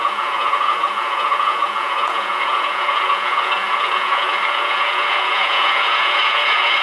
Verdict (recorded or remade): remade